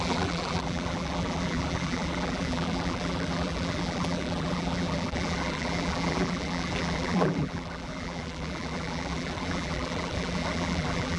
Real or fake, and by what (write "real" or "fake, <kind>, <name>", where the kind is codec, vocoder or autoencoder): fake, vocoder, BigVGAN v2